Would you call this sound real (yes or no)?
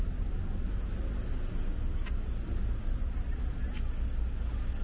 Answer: yes